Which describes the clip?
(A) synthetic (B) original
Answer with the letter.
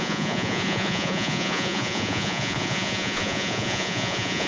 A